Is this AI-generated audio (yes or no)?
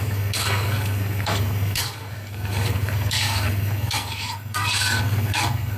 yes